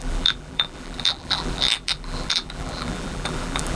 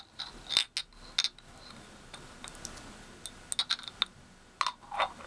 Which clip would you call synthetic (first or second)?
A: first